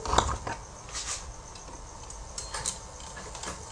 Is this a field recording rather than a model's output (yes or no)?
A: yes